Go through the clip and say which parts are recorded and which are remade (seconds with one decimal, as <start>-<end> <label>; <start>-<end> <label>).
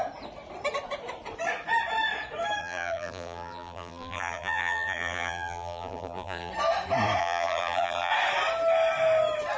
0.0-2.6 recorded; 2.6-6.5 remade; 6.5-7.2 recorded; 7.2-8.1 remade; 8.1-9.6 recorded